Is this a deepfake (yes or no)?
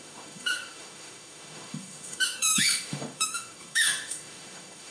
yes